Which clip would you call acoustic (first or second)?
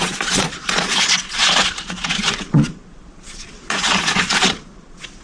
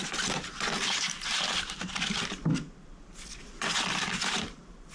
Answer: second